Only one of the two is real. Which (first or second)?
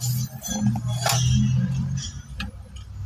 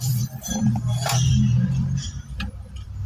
first